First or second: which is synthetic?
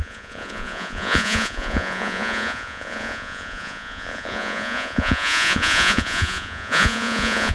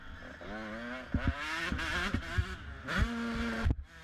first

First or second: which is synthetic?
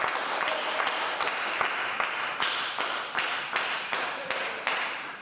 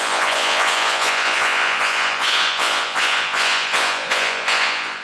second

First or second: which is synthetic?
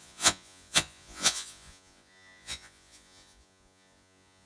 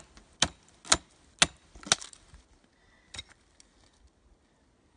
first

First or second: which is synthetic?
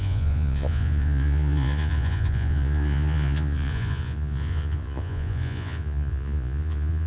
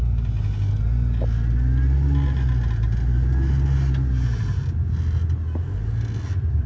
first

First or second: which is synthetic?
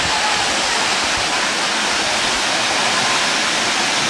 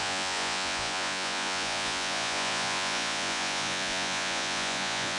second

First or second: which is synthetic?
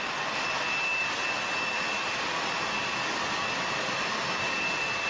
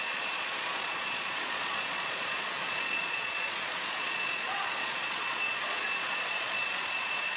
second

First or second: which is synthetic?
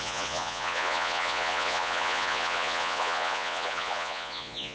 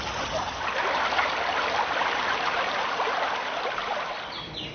first